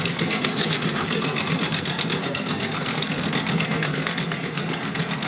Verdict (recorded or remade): remade